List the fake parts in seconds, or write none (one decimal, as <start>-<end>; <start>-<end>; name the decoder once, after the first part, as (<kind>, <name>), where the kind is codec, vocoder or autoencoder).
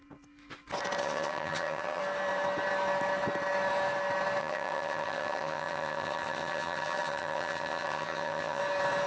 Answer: 1.0-2.0 (vocoder, HiFi-GAN); 4.4-8.6